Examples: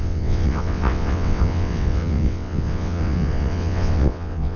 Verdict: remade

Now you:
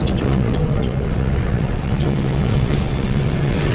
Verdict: remade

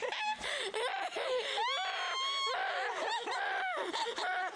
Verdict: recorded